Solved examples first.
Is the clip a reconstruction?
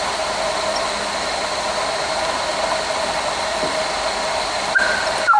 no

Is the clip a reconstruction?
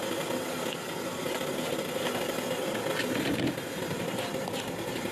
no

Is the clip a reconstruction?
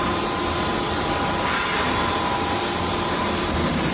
no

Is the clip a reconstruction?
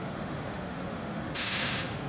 yes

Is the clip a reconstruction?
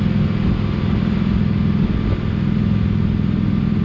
no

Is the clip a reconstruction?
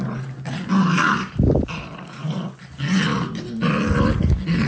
no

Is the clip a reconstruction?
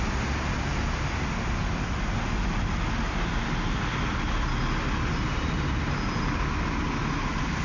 no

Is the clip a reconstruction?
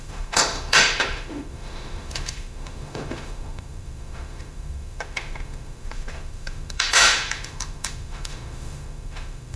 yes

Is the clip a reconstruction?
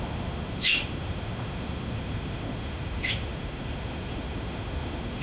yes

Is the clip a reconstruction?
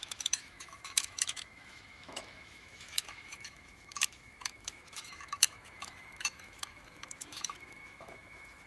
yes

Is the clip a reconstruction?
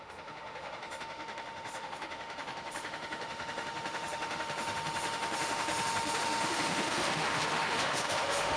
yes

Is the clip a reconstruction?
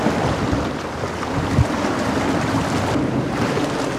no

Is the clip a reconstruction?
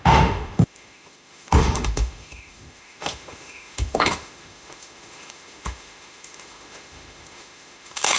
yes